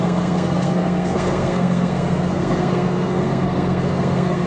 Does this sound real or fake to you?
fake